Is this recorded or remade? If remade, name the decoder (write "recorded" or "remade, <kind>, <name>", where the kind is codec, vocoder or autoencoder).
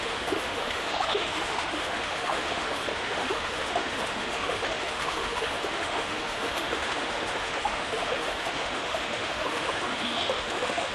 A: remade, autoencoder, DAC-VAE